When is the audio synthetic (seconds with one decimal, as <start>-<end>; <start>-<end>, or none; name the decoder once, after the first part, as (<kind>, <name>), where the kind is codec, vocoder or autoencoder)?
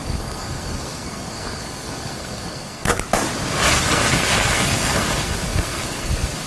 0.0-2.9 (codec, SNAC); 3.7-6.5